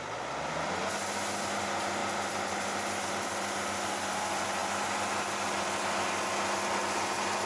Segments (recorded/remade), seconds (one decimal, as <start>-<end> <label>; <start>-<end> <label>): 0.0-7.5 recorded